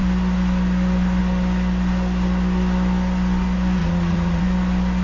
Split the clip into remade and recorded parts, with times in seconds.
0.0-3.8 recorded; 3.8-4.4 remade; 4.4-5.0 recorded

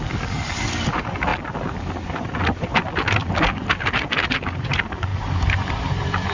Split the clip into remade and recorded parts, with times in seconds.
0.0-5.1 recorded; 5.1-6.3 remade